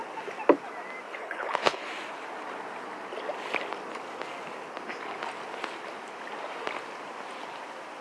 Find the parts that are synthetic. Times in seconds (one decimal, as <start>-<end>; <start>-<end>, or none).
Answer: 1.1-1.9